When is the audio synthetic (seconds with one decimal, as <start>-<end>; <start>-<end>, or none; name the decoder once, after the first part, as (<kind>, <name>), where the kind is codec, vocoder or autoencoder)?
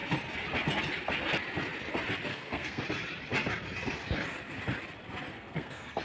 2.3-2.8 (codec, SNAC); 5.3-6.0